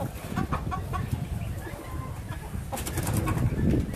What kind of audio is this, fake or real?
real